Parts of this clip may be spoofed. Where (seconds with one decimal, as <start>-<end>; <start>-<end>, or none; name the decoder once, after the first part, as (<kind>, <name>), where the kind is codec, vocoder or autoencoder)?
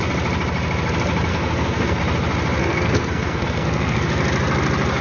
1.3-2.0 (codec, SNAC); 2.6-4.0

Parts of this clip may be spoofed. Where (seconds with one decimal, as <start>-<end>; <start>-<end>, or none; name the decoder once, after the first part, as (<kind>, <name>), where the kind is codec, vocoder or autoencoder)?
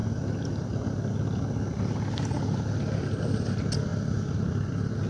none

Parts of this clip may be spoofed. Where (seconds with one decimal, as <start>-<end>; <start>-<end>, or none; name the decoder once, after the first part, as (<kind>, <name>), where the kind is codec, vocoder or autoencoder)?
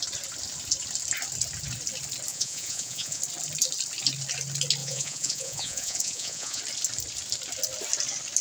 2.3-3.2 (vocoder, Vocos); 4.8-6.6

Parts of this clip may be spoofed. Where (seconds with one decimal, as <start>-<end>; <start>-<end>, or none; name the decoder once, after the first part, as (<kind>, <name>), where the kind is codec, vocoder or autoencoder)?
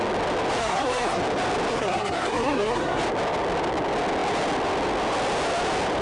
0.6-1.2 (codec, SNAC); 1.7-3.0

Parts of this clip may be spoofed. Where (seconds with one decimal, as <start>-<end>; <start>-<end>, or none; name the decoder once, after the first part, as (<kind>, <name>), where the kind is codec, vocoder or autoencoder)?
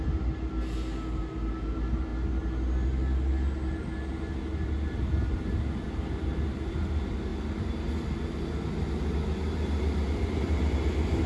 none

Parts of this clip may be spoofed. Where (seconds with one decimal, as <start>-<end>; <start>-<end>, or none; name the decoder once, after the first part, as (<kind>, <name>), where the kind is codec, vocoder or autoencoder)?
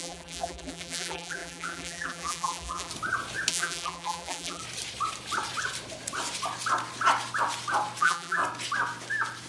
0.0-2.9 (vocoder, BigVGAN v2); 3.5-4.6; 8.0-8.4